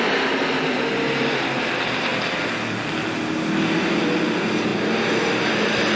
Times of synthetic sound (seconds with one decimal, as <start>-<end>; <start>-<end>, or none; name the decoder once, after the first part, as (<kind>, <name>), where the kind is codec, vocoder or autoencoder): none